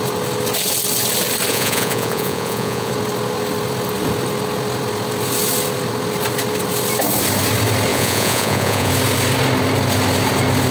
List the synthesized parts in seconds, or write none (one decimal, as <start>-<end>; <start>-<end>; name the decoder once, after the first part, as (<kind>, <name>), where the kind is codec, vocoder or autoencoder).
1.5-2.9 (vocoder, Vocos); 7.9-8.9